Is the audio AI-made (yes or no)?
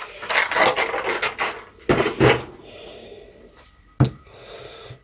no